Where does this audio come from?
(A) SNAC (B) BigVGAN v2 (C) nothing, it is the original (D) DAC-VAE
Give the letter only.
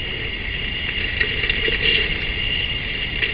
C